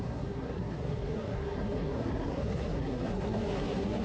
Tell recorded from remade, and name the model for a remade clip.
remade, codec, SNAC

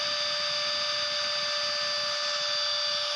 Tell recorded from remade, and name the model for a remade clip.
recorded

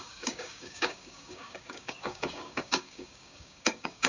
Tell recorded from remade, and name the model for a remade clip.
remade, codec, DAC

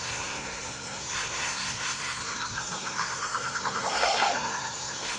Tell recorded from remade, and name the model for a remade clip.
remade, codec, SNAC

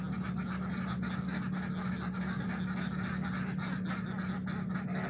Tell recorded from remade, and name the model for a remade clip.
recorded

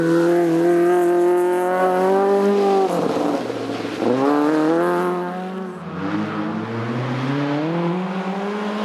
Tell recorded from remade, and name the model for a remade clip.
recorded